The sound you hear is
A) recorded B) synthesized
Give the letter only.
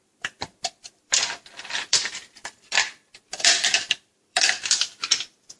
B